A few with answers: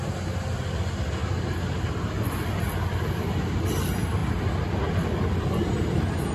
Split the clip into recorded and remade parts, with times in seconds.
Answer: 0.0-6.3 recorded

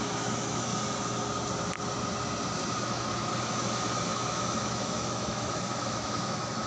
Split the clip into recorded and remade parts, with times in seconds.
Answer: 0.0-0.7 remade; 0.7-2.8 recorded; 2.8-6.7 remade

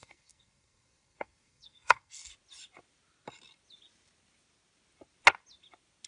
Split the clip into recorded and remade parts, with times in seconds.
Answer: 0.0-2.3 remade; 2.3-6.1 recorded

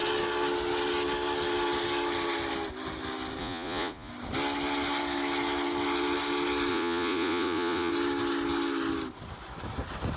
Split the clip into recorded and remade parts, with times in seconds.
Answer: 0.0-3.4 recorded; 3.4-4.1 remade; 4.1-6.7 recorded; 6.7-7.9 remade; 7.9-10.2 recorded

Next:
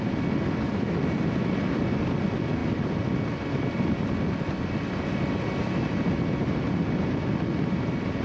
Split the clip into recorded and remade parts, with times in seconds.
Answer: 0.0-8.2 recorded

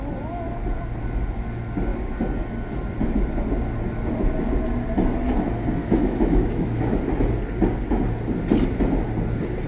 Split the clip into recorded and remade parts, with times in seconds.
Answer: 0.0-5.8 recorded; 5.8-7.0 remade; 7.0-9.7 recorded